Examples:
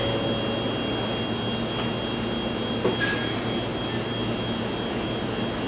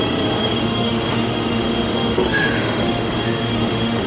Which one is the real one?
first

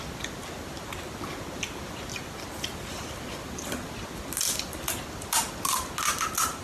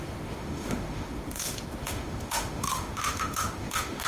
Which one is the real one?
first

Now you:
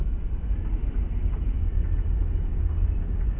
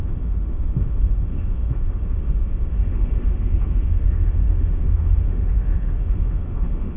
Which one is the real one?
first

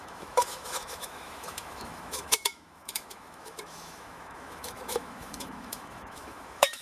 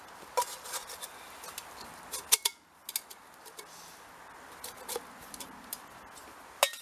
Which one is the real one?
second